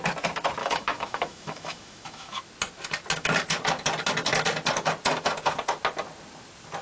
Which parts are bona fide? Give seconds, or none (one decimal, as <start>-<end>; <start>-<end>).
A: 0.0-0.6; 2.4-6.8